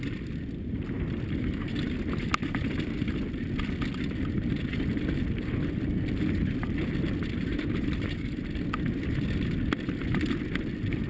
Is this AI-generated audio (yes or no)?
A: no